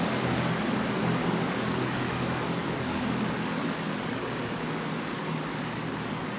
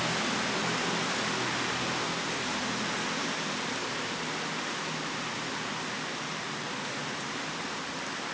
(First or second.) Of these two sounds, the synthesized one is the first